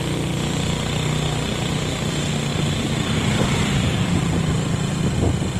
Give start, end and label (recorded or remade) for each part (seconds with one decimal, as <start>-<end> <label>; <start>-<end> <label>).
0.0-2.5 recorded; 2.5-5.0 remade; 5.0-5.6 recorded